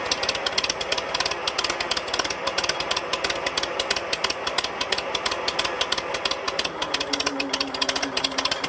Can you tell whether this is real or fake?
real